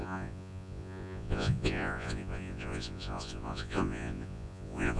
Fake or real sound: fake